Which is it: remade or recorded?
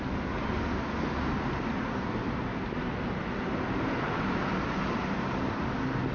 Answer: recorded